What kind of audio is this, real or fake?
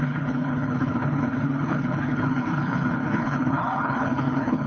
fake